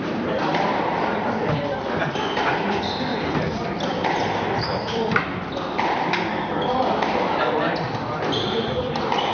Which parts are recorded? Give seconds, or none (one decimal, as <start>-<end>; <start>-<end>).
3.1-6.5